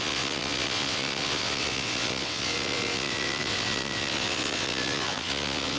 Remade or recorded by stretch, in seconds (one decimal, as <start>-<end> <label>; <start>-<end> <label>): 0.0-5.8 remade